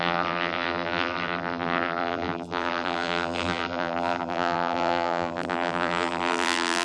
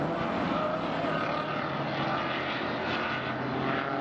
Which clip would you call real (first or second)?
second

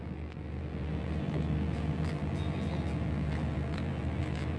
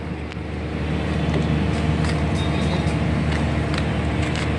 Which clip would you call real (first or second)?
second